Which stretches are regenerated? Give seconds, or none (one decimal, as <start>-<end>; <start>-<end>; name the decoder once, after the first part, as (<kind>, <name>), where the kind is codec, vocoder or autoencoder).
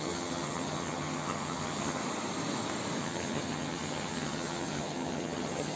0.0-2.0 (vocoder, HiFi-GAN); 3.0-5.8